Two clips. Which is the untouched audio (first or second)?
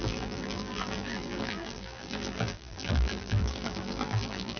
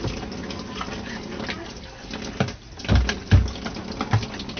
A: second